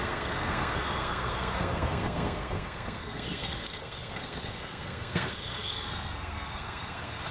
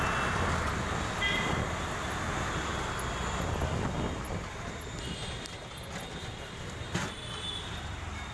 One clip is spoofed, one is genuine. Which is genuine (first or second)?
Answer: second